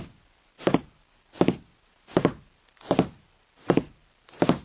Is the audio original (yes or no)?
yes